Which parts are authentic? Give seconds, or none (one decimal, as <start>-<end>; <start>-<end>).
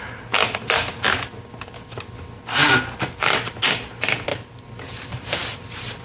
0.0-2.6; 3.6-4.3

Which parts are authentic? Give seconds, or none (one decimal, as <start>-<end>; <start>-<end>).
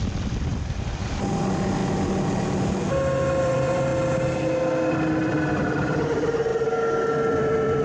1.8-3.4; 3.9-4.9; 6.5-7.3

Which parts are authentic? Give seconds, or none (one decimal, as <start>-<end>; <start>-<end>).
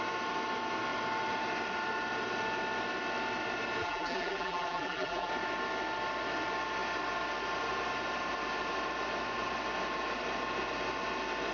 0.0-3.8; 5.3-11.5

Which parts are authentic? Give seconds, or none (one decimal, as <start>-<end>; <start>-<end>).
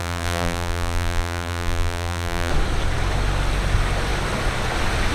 2.5-5.1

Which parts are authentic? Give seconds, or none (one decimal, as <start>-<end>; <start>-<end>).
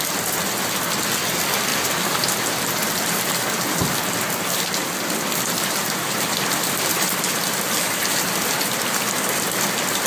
0.0-10.1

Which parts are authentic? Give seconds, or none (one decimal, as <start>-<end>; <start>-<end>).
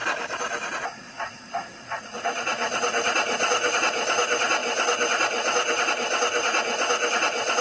0.8-2.5; 3.8-4.6; 5.9-7.6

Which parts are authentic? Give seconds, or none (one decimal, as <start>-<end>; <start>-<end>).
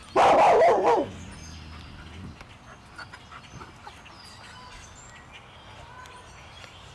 0.0-6.9